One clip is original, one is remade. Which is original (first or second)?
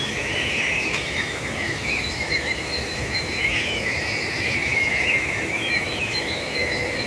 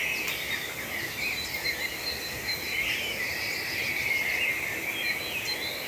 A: second